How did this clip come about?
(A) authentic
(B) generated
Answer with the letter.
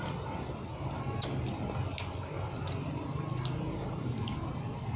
A